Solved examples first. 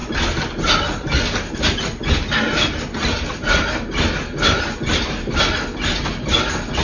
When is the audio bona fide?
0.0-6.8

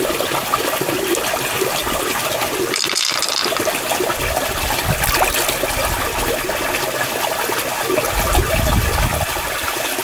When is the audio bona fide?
0.0-1.8; 4.8-10.0

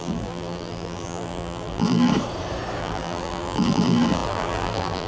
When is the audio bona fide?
2.1-2.8